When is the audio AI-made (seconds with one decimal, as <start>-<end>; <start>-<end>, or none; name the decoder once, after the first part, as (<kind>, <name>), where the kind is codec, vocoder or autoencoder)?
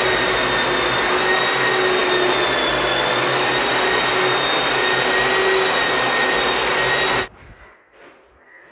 none